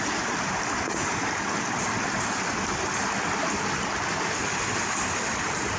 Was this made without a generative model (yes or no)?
yes